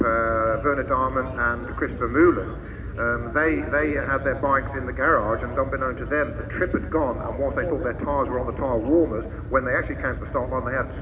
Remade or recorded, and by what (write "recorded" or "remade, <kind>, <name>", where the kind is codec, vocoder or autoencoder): recorded